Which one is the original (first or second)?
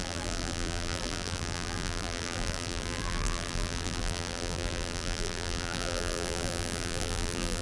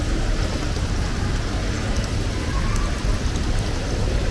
second